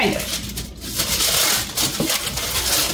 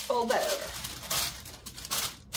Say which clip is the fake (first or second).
second